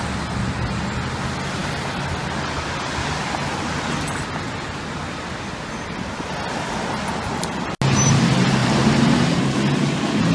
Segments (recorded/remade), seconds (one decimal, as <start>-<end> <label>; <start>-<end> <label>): 0.0-8.6 recorded; 8.6-9.4 remade; 9.4-10.3 recorded

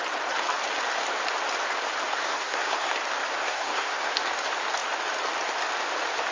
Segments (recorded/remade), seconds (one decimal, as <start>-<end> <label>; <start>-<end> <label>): 0.0-2.1 recorded; 2.1-2.9 remade; 2.9-3.4 recorded; 3.4-4.1 remade; 4.1-6.3 recorded

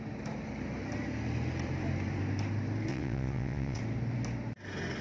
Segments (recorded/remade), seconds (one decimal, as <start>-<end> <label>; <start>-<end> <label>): 0.0-2.9 recorded; 2.9-3.8 remade; 3.8-5.0 recorded

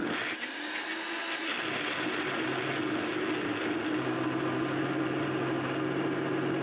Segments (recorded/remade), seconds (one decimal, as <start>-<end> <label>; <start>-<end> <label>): 0.0-6.6 recorded

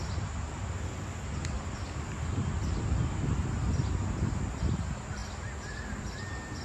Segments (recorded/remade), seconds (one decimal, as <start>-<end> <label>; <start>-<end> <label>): 0.0-6.6 recorded

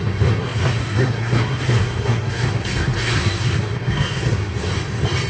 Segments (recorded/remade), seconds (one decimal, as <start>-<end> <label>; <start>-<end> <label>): 0.0-4.7 remade; 4.7-5.3 recorded

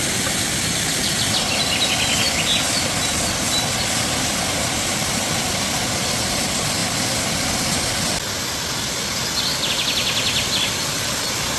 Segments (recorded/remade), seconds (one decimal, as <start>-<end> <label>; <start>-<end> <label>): 0.0-11.6 recorded

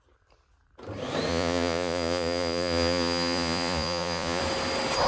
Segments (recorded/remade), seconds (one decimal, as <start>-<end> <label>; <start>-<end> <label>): 0.0-1.3 recorded; 1.3-4.4 remade; 4.4-5.1 recorded